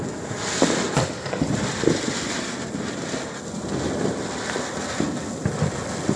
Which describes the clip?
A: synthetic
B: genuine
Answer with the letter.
B